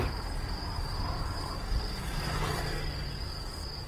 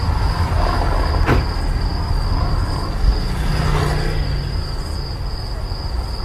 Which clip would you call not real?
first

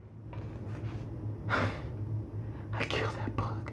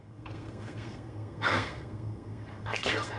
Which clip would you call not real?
second